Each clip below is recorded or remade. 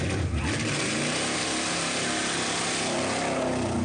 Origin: recorded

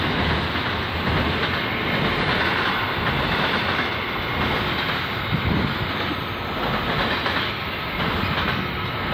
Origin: recorded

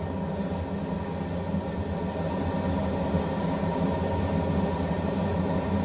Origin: recorded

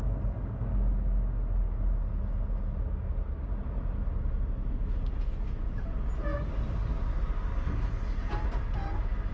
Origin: recorded